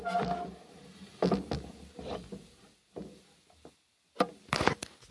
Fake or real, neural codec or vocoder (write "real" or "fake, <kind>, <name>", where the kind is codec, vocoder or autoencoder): real